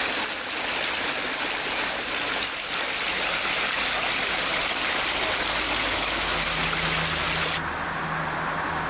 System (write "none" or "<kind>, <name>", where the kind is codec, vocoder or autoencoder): none